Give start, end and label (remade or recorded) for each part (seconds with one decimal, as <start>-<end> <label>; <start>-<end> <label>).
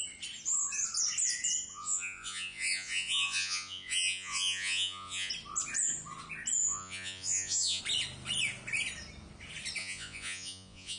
0.0-1.7 recorded; 1.7-5.3 remade; 5.3-6.6 recorded; 6.6-7.8 remade; 7.8-9.8 recorded; 9.8-11.0 remade